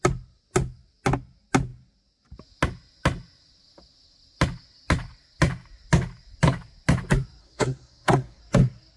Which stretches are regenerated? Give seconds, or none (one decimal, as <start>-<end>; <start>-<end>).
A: 7.4-8.4